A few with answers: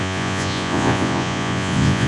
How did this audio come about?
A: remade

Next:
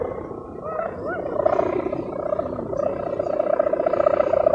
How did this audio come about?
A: recorded